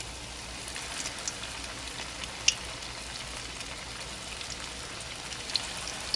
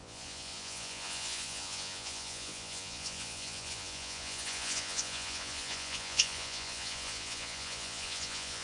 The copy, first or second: second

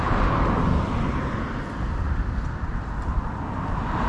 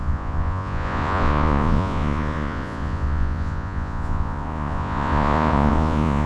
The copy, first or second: second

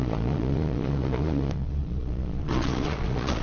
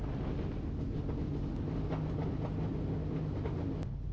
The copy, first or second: first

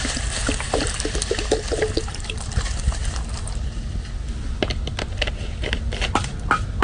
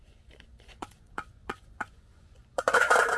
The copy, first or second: second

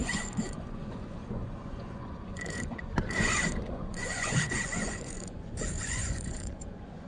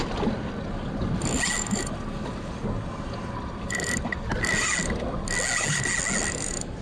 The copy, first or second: first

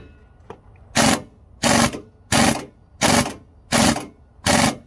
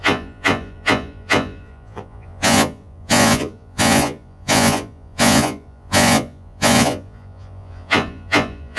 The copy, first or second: second